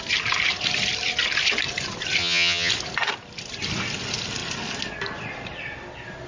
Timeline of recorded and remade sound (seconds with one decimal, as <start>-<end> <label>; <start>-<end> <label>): 0.0-2.2 recorded; 2.2-2.7 remade; 2.7-6.3 recorded